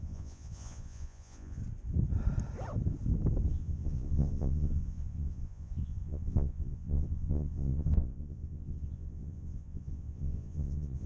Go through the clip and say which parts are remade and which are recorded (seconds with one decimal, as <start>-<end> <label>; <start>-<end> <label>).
0.0-1.6 remade; 1.6-3.5 recorded; 3.5-11.1 remade